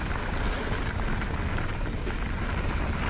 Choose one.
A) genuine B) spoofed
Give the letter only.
A